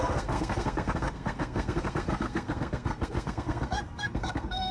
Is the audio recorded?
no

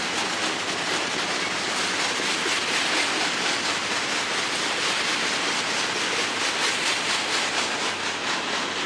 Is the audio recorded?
yes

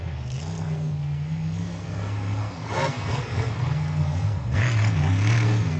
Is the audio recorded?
no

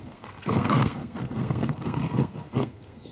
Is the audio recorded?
no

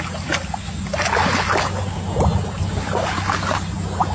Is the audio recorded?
yes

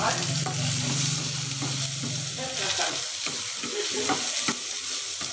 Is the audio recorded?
yes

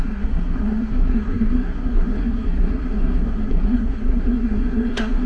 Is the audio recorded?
no